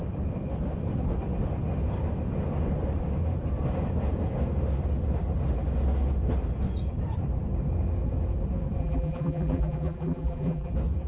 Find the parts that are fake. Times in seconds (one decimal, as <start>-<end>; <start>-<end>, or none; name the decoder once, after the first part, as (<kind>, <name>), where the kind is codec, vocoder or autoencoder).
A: 8.8-10.7 (vocoder, BigVGAN v2)